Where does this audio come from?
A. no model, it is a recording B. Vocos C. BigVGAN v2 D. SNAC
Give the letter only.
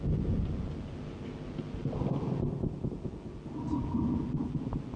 A